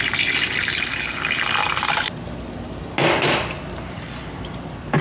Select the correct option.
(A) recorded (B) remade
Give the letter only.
A